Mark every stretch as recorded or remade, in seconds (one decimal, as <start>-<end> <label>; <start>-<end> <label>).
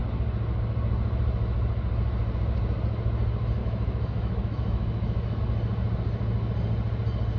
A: 0.0-3.6 recorded; 3.6-5.4 remade; 5.4-7.4 recorded